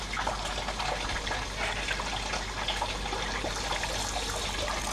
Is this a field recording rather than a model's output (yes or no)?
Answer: yes